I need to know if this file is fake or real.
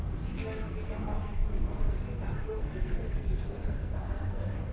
fake